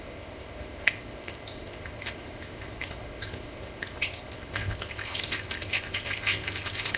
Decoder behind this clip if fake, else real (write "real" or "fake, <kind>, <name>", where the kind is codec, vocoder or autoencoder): fake, codec, ZipCodec